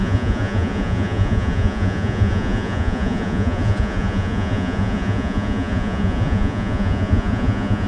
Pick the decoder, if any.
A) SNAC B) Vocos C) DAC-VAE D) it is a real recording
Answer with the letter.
B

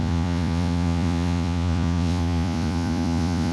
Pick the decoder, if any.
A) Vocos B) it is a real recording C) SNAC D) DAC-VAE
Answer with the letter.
A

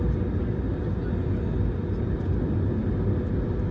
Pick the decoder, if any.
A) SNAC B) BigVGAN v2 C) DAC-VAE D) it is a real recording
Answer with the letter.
D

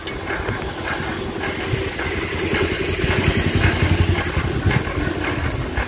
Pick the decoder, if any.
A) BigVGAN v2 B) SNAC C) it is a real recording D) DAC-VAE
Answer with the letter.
C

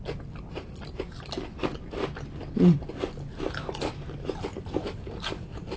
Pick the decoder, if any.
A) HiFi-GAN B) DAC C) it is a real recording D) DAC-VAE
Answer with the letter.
C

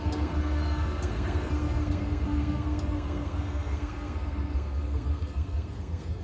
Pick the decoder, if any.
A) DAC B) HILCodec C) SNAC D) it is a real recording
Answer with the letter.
C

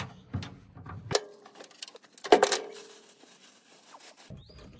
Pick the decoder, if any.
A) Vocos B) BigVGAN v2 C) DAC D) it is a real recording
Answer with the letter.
D